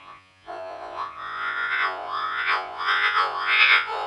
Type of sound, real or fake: fake